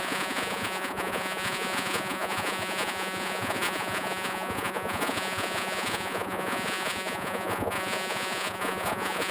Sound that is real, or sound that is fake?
fake